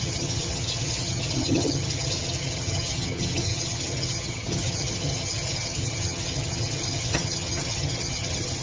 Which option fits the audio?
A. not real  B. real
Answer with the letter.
A